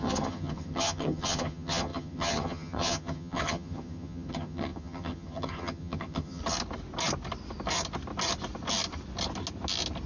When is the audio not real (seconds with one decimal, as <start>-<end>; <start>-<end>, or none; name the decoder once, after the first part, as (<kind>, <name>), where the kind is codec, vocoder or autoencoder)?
0.0-6.4 (vocoder, HiFi-GAN)